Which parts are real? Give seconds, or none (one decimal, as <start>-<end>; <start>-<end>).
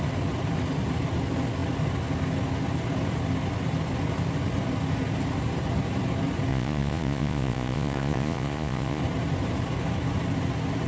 0.0-6.5; 9.0-10.9